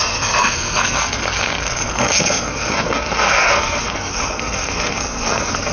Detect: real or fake fake